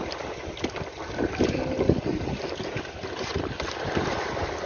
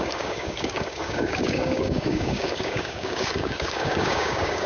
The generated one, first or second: second